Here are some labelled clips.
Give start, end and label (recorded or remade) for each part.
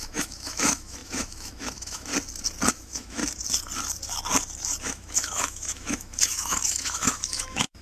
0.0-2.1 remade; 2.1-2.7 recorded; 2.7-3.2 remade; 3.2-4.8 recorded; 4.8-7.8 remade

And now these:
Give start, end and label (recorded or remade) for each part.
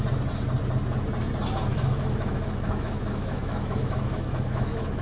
0.0-1.7 recorded; 1.7-5.0 remade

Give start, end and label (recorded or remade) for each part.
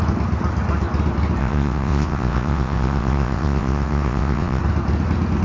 0.0-1.4 recorded; 1.4-4.6 remade; 4.6-5.4 recorded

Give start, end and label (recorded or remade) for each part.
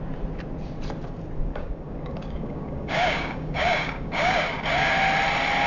0.0-1.5 recorded; 1.5-4.9 remade; 4.9-5.7 recorded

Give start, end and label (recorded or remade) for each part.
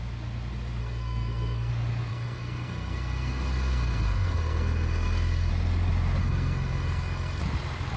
0.0-0.8 recorded; 0.8-1.7 remade; 1.7-2.1 recorded; 2.1-5.5 remade; 5.5-6.2 recorded; 6.2-7.4 remade; 7.4-8.0 recorded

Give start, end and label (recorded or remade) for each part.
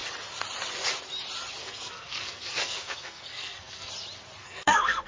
0.0-1.6 recorded; 1.6-3.9 remade; 3.9-4.4 recorded; 4.4-5.1 remade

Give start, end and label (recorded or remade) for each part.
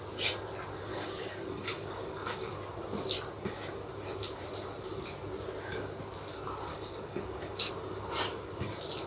0.0-0.9 recorded; 0.9-2.5 remade; 2.5-6.7 recorded; 6.7-7.7 remade; 7.7-9.1 recorded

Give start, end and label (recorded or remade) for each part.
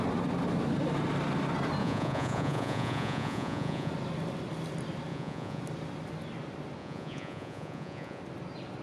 0.0-1.8 recorded; 1.8-3.9 remade; 3.9-5.1 recorded; 5.1-5.6 remade; 5.6-6.8 recorded; 6.8-8.2 remade; 8.2-8.8 recorded